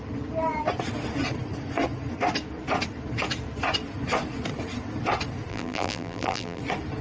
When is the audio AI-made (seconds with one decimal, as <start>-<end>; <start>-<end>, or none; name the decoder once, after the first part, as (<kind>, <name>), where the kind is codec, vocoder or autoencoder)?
5.5-6.6 (vocoder, BigVGAN v2)